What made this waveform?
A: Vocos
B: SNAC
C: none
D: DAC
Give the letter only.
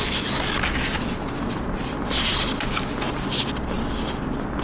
C